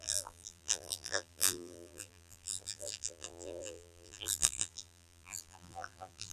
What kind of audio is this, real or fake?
fake